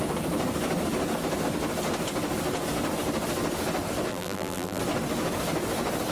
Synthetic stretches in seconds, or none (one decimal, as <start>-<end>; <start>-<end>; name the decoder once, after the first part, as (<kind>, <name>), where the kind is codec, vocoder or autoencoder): 4.1-4.8 (vocoder, BigVGAN v2)